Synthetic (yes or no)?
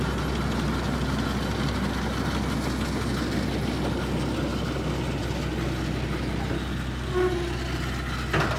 no